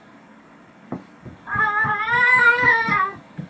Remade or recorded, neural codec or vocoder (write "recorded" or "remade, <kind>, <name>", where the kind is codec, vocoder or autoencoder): remade, codec, DAC